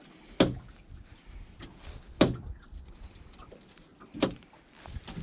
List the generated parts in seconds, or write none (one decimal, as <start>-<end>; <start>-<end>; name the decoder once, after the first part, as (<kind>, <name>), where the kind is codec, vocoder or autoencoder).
none